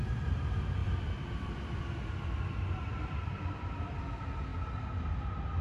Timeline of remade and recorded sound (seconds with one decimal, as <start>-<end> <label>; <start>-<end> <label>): 0.0-0.8 recorded; 0.8-4.0 remade; 4.0-5.6 recorded